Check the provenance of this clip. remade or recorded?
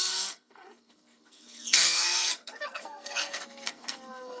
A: remade